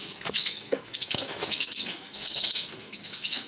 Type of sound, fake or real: fake